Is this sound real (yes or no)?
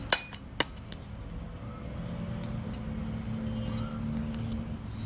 yes